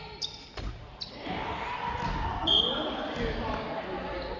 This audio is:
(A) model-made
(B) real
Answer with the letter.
B